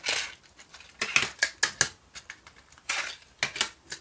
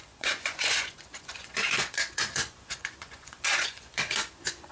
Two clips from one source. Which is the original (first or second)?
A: first